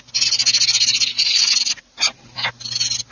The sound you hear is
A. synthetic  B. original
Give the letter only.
B